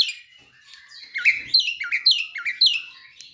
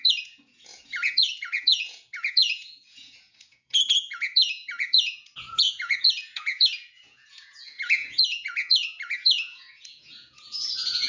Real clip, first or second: first